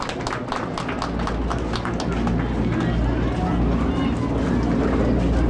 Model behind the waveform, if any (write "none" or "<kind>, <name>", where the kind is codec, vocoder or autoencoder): none